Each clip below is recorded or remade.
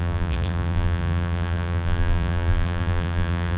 remade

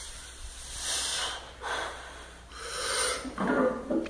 recorded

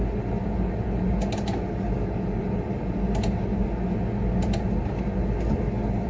recorded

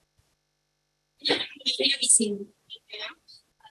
recorded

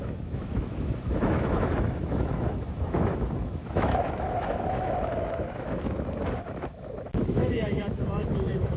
remade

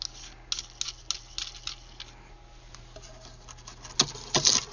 recorded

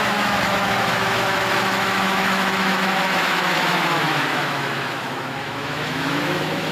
remade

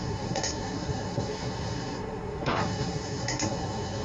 remade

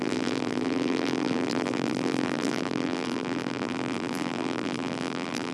remade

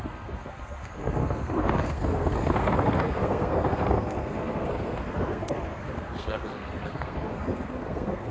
remade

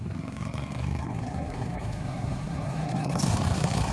remade